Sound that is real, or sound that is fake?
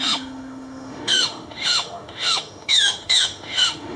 fake